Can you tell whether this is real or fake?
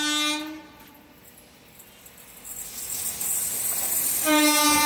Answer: real